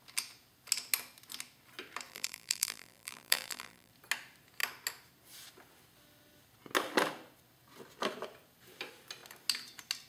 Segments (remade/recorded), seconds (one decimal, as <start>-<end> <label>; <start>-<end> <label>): 0.0-2.1 recorded; 2.1-3.9 remade; 3.9-10.1 recorded